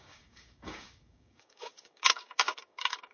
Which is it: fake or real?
fake